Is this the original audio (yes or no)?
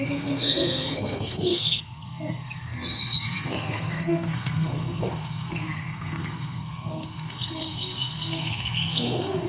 no